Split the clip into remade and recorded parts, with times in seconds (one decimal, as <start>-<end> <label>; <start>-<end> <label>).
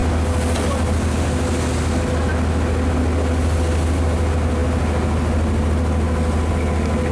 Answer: 0.0-7.1 recorded